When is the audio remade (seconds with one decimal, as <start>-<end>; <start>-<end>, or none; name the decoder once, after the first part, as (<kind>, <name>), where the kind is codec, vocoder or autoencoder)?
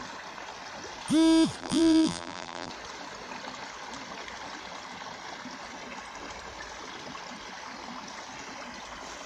1.6-2.7 (vocoder, BigVGAN v2)